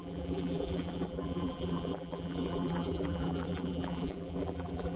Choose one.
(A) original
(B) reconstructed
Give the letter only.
B